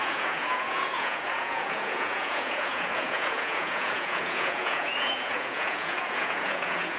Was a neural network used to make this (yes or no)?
yes